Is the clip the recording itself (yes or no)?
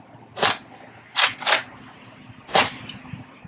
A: yes